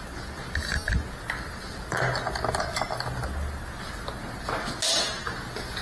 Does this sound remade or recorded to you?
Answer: recorded